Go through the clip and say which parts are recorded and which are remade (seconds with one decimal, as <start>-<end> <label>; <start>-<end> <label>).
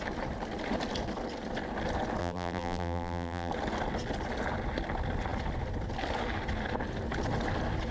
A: 0.0-2.2 recorded; 2.2-3.5 remade; 3.5-7.9 recorded